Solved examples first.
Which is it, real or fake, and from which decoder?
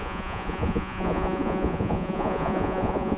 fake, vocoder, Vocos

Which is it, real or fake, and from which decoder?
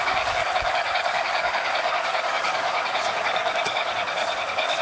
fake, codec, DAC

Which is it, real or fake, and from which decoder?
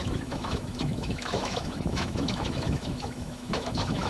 fake, autoencoder, DAC-VAE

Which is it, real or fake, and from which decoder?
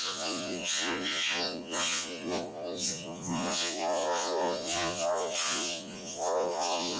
fake, vocoder, Vocos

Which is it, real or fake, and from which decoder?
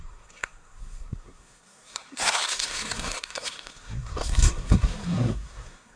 fake, codec, SNAC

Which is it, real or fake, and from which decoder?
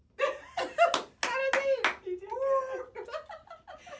real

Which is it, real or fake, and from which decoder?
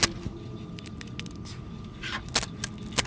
real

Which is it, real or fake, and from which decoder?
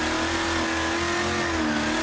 real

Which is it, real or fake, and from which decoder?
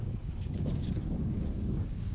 fake, codec, DAC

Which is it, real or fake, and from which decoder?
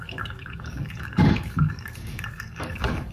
fake, codec, DAC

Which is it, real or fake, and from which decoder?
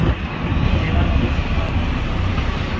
real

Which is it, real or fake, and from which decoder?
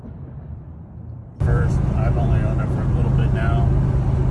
fake, vocoder, BigVGAN v2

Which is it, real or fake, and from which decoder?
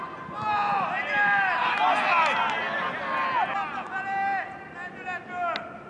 real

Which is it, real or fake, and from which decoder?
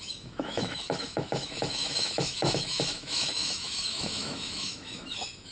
fake, autoencoder, DAC-VAE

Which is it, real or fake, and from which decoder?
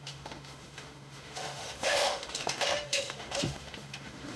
fake, autoencoder, DAC-VAE